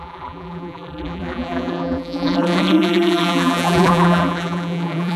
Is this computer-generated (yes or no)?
yes